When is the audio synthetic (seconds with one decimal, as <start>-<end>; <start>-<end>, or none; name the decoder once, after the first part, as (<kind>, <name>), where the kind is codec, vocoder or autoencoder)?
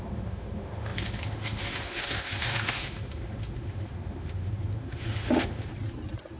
0.0-5.7 (autoencoder, DAC-VAE)